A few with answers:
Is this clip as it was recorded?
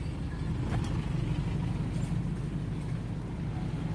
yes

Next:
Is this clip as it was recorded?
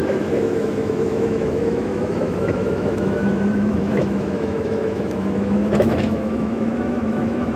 no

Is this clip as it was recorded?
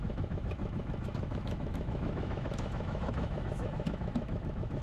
no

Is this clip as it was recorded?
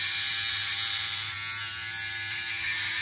yes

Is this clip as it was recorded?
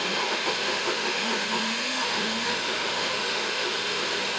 no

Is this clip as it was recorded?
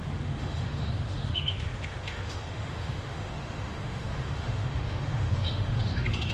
no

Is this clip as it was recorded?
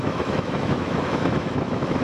no